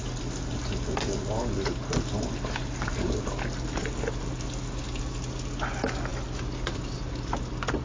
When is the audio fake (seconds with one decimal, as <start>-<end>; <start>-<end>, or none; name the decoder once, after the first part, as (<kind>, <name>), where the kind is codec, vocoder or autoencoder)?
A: none